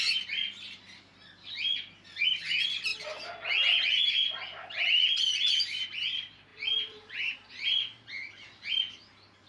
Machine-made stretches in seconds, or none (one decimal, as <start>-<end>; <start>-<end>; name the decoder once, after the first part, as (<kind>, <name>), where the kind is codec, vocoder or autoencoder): 6.5-7.5 (vocoder, BigVGAN v2)